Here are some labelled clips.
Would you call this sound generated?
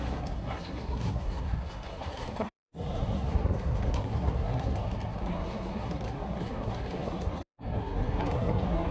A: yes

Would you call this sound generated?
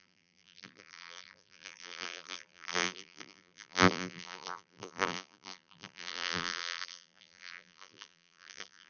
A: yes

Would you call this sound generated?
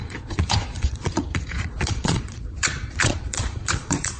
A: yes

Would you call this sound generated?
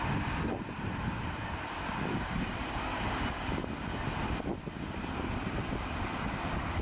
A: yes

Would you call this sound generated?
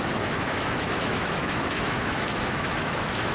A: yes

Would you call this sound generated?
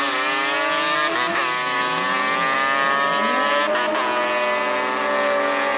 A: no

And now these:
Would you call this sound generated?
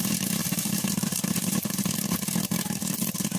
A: no